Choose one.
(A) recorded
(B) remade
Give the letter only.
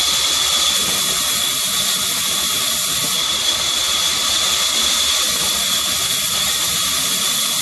A